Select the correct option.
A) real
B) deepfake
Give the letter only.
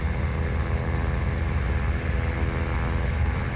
A